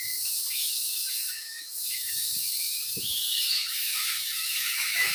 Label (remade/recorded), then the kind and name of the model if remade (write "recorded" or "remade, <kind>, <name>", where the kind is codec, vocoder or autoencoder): remade, autoencoder, DAC-VAE